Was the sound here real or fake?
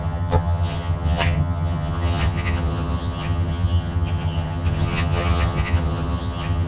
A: fake